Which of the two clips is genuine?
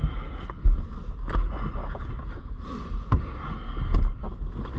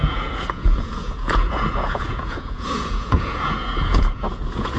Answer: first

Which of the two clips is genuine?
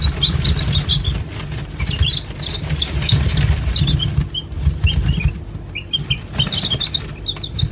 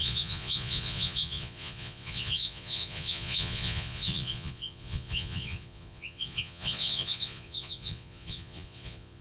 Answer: first